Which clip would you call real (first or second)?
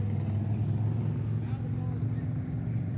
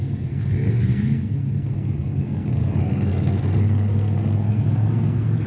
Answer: first